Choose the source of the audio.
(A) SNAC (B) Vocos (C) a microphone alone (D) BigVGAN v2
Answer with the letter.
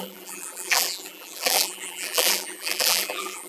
D